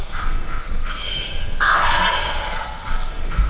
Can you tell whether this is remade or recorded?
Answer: remade